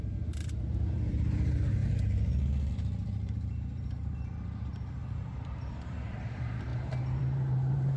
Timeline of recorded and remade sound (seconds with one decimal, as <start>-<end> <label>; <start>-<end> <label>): 0.0-1.8 remade; 1.8-2.7 recorded; 2.7-4.7 remade; 4.7-5.2 recorded; 5.2-8.0 remade

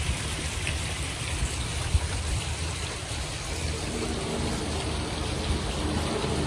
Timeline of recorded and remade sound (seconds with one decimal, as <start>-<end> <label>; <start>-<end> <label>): 0.0-1.7 recorded; 1.7-2.7 remade; 2.7-6.5 recorded

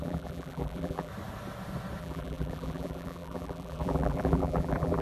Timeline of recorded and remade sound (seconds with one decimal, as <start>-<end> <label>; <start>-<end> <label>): 0.0-1.1 remade; 1.1-2.0 recorded; 2.0-5.0 remade

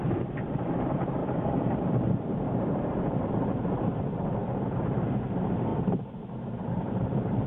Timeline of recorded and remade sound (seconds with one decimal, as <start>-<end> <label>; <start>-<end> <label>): 0.0-7.5 remade

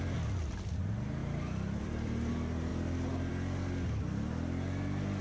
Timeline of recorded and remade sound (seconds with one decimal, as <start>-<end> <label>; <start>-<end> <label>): 0.0-1.2 recorded; 1.2-2.3 remade; 2.3-5.2 recorded